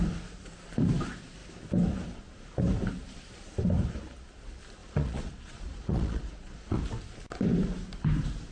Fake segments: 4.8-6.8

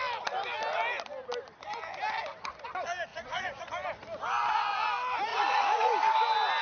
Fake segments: 3.1-3.7; 5.3-5.9

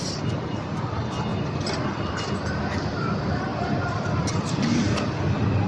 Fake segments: none

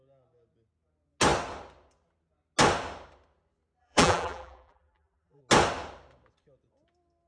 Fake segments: 3.8-5.4

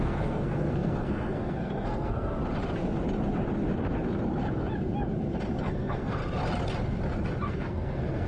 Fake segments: 0.0-2.4; 5.6-6.2; 7.5-8.3

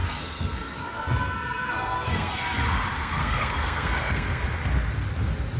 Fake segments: 0.0-2.4; 3.0-4.4

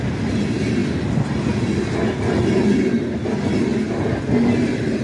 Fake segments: none